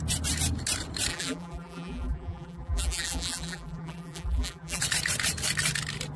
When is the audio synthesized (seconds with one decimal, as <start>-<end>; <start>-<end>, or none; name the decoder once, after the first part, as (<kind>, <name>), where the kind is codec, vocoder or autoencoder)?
1.1-4.8 (vocoder, BigVGAN v2)